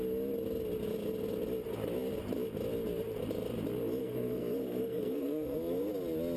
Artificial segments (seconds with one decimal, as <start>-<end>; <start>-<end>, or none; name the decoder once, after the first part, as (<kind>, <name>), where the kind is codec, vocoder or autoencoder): 4.0-5.9 (codec, SNAC)